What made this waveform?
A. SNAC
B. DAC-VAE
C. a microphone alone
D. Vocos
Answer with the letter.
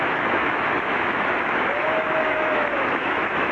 B